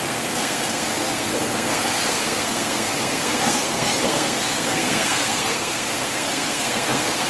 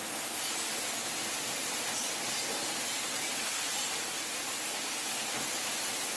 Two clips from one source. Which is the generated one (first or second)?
first